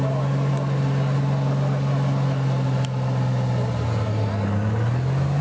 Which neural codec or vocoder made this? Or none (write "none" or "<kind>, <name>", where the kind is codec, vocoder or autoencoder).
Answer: none